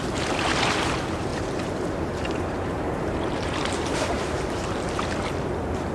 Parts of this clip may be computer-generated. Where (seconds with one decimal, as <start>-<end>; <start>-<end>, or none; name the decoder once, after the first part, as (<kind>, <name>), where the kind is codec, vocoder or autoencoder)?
1.3-4.2 (vocoder, BigVGAN v2)